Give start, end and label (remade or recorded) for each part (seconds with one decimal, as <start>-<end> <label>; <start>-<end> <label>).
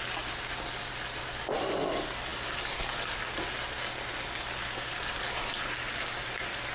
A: 0.0-6.7 recorded